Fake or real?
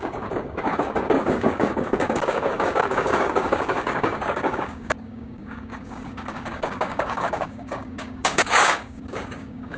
fake